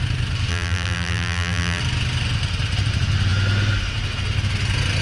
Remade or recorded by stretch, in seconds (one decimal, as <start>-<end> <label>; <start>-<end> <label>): 0.0-0.5 recorded; 0.5-1.8 remade; 1.8-5.0 recorded

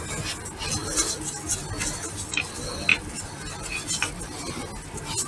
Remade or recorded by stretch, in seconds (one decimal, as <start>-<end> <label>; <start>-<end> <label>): 0.0-0.8 recorded; 0.8-1.3 remade; 1.3-2.9 recorded; 2.9-5.3 remade

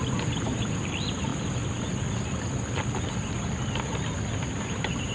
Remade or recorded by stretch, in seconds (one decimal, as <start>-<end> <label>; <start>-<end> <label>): 0.0-1.3 remade; 1.3-4.4 recorded; 4.4-5.1 remade

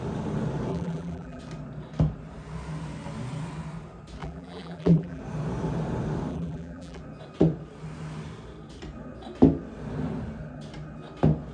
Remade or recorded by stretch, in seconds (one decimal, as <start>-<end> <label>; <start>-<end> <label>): 0.0-0.7 recorded; 0.7-1.4 remade; 1.4-4.2 recorded; 4.2-5.2 remade; 5.2-6.3 recorded; 6.3-7.0 remade; 7.0-11.5 recorded

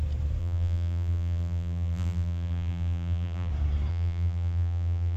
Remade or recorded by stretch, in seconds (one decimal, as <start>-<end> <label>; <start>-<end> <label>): 0.0-0.4 recorded; 0.4-3.5 remade; 3.5-3.9 recorded; 3.9-5.2 remade